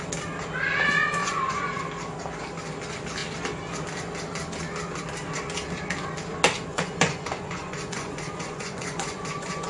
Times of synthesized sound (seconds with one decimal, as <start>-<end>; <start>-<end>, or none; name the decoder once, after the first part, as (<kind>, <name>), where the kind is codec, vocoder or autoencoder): 1.2-1.8 (vocoder, Vocos); 6.7-9.7